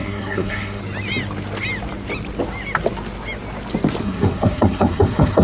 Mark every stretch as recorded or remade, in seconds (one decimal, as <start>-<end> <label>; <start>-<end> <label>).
0.0-0.8 remade; 0.8-4.0 recorded; 4.0-5.4 remade